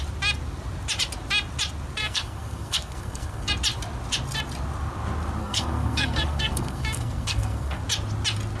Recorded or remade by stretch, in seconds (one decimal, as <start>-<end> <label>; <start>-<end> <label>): 0.0-2.0 recorded; 2.0-3.5 remade; 3.5-5.4 recorded; 5.4-7.8 remade; 7.8-8.6 recorded